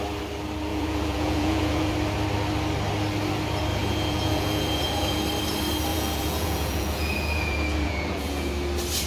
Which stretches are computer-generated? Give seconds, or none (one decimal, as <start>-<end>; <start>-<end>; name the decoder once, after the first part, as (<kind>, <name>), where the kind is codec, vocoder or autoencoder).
0.7-1.9 (vocoder, Vocos); 3.7-5.2; 5.9-8.5